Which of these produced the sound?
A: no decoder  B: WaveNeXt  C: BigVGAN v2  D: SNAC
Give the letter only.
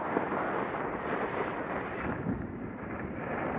A